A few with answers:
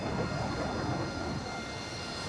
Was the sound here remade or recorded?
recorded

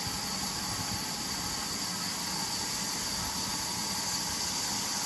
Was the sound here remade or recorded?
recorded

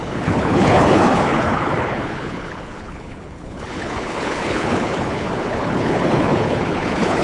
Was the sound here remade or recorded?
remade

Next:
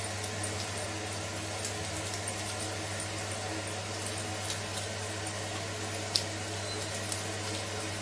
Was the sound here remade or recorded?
recorded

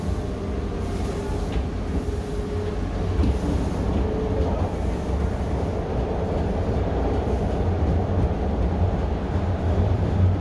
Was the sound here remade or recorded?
recorded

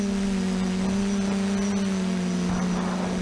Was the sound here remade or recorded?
recorded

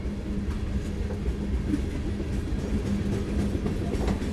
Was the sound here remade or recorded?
recorded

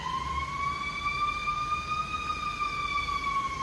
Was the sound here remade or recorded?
recorded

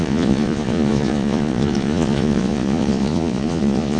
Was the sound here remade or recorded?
remade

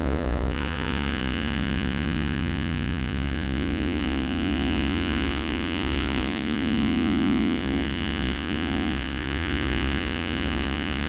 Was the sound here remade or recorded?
remade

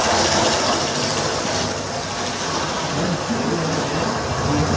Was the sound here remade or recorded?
recorded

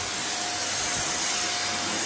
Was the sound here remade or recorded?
recorded